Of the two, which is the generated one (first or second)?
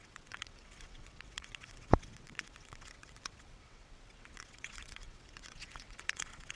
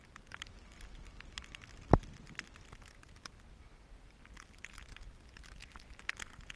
first